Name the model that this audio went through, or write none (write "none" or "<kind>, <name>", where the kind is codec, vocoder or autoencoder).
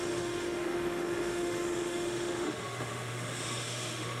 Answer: autoencoder, DAC-VAE